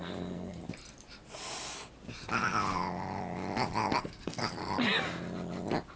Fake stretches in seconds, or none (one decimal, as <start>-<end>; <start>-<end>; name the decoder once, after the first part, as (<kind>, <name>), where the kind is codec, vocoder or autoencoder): 0.0-0.6 (codec, SNAC); 4.0-4.4